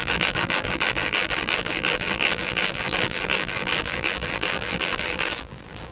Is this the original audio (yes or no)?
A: no